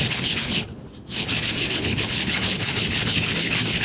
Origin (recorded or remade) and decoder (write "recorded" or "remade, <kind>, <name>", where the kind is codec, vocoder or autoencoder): remade, codec, HILCodec